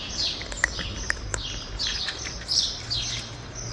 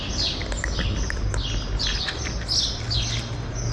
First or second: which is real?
second